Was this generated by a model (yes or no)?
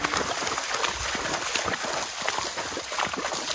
no